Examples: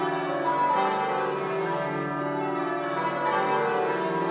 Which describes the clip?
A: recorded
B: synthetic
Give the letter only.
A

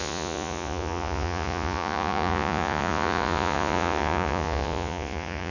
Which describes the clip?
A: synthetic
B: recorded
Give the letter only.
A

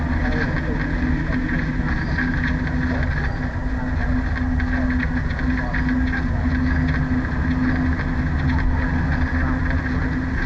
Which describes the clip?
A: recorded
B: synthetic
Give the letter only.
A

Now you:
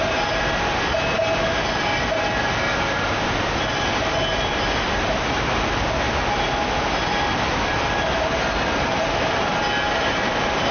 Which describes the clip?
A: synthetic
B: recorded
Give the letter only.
B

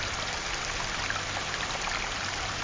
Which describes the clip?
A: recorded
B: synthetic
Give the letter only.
A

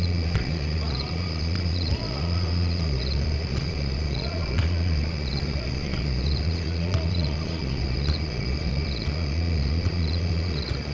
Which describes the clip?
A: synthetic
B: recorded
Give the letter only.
A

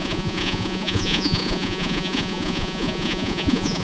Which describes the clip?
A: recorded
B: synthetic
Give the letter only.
B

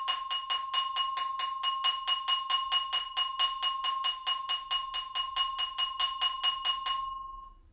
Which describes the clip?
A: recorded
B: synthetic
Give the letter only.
A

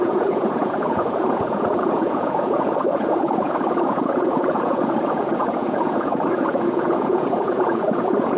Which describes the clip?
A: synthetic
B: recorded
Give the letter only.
A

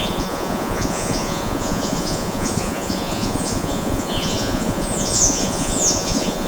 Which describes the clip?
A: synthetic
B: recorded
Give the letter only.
A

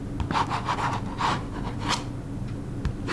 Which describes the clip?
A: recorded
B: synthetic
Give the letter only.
A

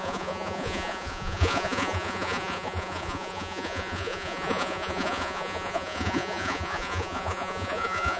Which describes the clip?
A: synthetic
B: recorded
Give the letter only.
A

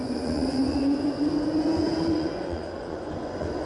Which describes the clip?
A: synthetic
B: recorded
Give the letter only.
A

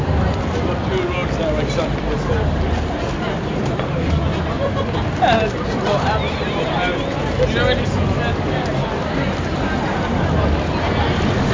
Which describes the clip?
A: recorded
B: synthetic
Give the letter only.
A